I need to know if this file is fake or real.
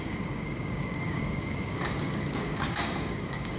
fake